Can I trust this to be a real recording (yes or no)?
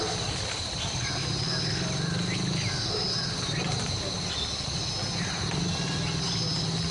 yes